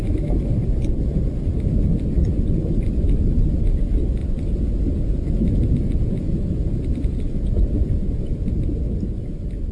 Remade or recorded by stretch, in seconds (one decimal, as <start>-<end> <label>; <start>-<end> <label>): 0.0-9.7 recorded